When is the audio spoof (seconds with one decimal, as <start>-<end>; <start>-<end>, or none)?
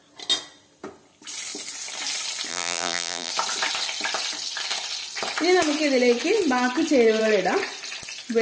2.5-3.3